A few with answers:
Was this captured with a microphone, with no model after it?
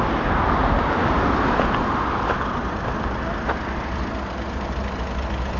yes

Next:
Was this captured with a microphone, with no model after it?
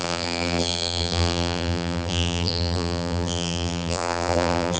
no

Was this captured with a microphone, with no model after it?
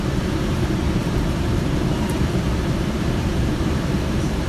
no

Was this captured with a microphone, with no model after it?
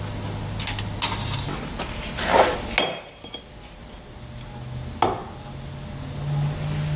yes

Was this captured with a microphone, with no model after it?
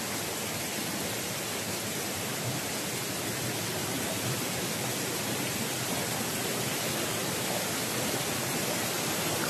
yes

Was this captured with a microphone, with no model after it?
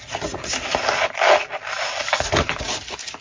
no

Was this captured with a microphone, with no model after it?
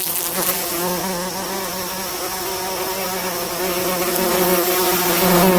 yes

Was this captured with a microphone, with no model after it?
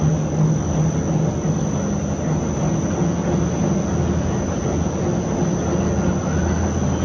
yes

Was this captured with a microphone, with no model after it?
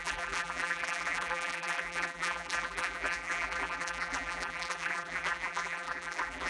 no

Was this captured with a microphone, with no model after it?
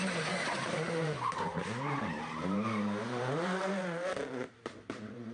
no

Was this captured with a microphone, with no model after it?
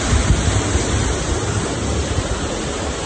yes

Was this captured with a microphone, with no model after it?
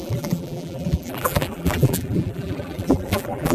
no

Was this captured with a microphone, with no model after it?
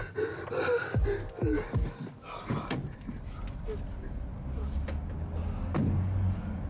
yes